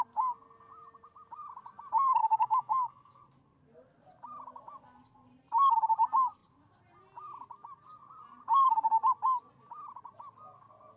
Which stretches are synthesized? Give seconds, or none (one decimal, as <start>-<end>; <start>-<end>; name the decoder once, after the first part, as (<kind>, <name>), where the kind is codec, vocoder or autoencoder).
2.2-3.2 (codec, DAC)